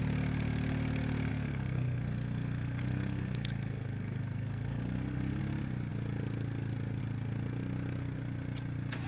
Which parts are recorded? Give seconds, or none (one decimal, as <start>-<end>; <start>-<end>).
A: 0.0-1.3; 5.4-9.1